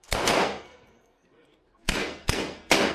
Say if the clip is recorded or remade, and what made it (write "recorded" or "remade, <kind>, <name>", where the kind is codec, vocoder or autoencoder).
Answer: remade, codec, SNAC